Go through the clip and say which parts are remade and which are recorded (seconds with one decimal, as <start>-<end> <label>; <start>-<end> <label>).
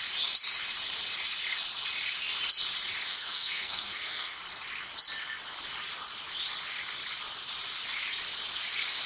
0.0-3.1 recorded; 3.1-4.4 remade; 4.4-9.1 recorded